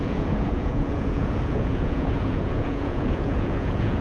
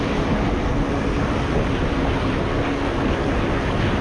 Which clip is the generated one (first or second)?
first